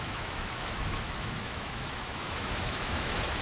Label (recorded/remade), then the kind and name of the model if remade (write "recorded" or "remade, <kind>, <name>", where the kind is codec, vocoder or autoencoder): remade, autoencoder, DAC-VAE